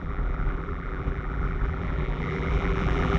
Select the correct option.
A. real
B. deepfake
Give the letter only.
B